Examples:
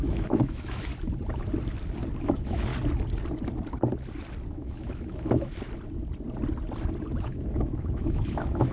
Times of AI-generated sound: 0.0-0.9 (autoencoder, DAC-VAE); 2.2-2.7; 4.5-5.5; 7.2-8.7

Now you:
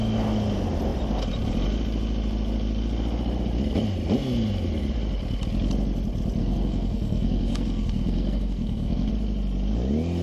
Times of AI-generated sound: 6.4-9.1 (codec, SNAC)

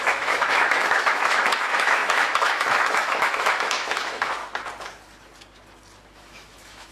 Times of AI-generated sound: 0.0-4.4 (autoencoder, DAC-VAE); 6.1-6.9

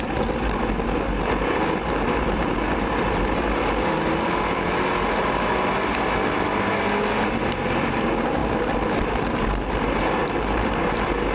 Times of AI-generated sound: none

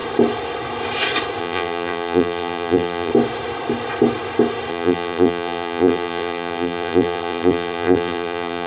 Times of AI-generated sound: 1.4-3.1 (vocoder, BigVGAN v2); 4.7-8.7